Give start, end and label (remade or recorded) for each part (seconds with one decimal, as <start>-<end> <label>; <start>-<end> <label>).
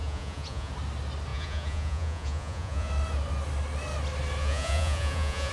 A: 0.0-0.7 remade; 0.7-1.3 recorded; 1.3-2.9 remade; 2.9-4.4 recorded; 4.4-5.5 remade